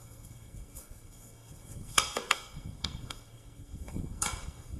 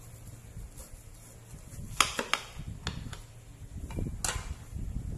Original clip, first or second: second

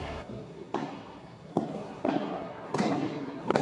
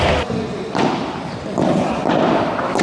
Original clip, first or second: second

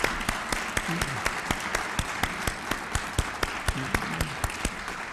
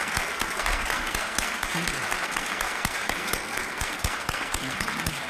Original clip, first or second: first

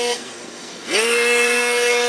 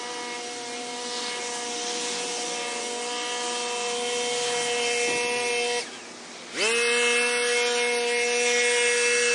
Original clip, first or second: second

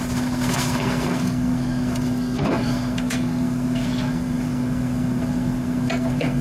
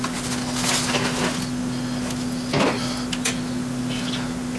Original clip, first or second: second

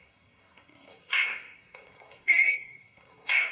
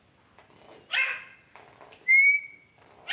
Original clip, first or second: second